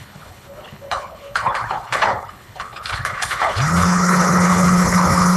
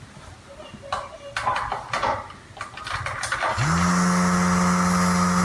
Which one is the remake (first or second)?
first